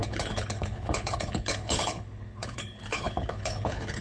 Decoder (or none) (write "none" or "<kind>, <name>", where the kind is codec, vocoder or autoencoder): codec, HILCodec